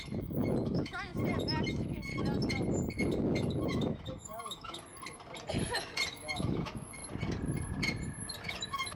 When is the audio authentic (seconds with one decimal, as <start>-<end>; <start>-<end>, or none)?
1.1-1.7; 2.1-2.9; 4.9-6.1; 7.0-8.4